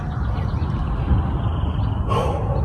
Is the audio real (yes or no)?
yes